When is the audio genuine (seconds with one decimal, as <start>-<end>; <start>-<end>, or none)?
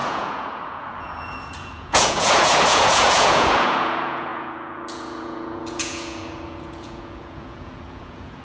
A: none